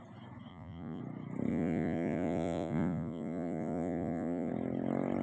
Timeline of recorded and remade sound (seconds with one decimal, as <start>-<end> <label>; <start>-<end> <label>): 0.0-0.5 recorded; 0.5-1.0 remade; 1.0-1.5 recorded; 1.5-4.5 remade; 4.5-5.2 recorded